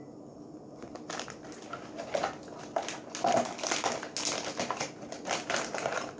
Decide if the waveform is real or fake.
real